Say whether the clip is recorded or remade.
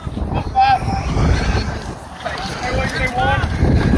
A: recorded